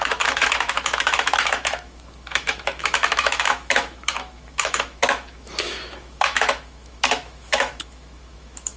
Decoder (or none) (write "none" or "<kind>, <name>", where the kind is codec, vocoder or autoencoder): autoencoder, DAC-VAE